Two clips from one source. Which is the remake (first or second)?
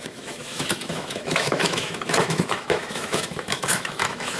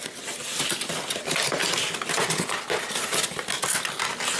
first